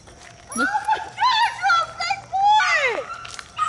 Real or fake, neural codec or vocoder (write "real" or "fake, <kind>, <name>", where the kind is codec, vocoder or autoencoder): real